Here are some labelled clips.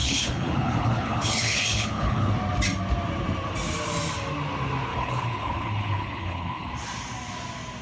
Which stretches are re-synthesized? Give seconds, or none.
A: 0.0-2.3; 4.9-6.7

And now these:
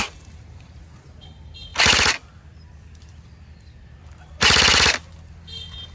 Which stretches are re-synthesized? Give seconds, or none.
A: none

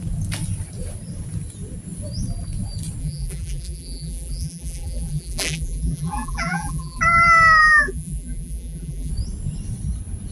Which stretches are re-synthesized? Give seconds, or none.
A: 3.0-7.0; 7.6-9.1

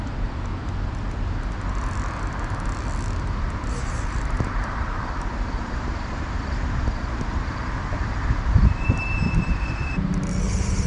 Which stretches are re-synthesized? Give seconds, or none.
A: 0.0-0.5; 3.7-10.9

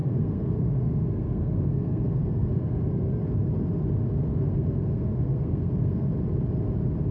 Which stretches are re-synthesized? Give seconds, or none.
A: 0.0-3.2; 4.3-6.1